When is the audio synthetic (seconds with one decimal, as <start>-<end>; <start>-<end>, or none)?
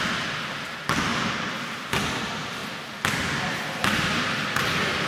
1.1-2.0